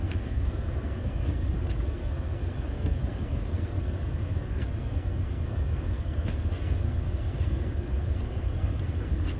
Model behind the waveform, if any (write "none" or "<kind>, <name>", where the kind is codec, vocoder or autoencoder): codec, SNAC